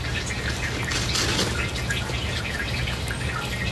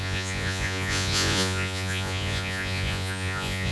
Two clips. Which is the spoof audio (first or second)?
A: second